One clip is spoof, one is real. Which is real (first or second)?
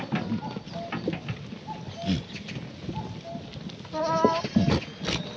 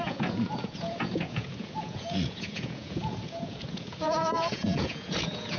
first